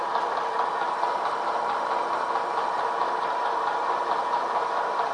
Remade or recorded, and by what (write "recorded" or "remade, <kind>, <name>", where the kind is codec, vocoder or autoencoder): remade, vocoder, BigVGAN v2